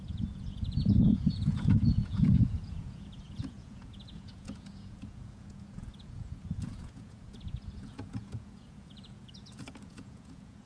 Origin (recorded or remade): remade